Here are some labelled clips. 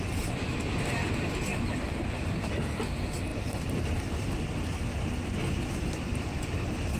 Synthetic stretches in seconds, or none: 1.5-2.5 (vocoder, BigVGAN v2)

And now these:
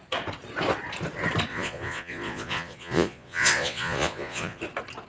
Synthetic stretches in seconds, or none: 1.5-4.6 (vocoder, Vocos)

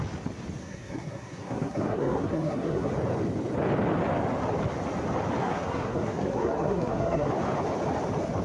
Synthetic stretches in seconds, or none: 0.6-2.9 (codec, SNAC); 5.4-7.3

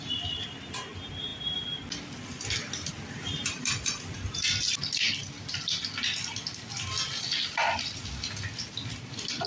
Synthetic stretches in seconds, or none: none

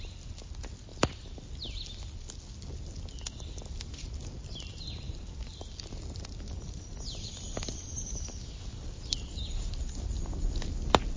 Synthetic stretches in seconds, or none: none

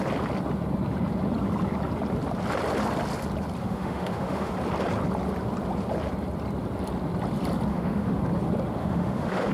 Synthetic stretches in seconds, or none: 3.6-4.5 (autoencoder, DAC-VAE); 7.7-8.2; 8.8-9.5